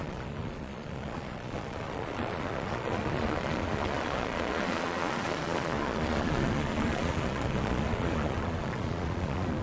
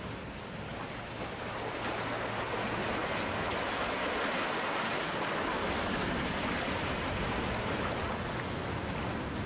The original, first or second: second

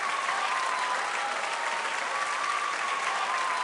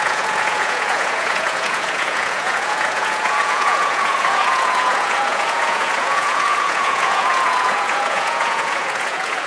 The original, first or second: first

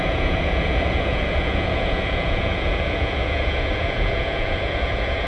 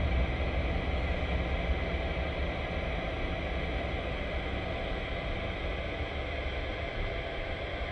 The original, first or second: second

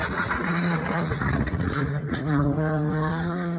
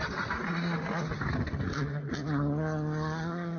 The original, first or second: second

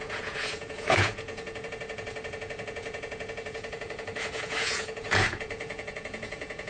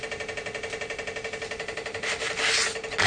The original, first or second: second